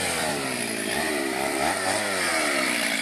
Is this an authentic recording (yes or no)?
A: no